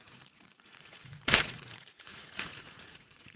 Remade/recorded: remade